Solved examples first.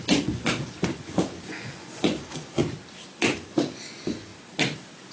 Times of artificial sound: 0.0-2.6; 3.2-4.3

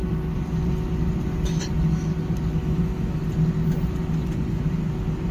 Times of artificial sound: 2.6-3.2